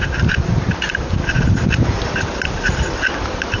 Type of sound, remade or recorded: remade